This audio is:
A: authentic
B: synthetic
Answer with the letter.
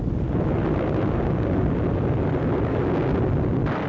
A